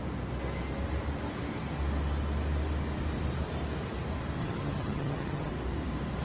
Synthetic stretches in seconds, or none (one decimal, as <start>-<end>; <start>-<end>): 4.4-5.5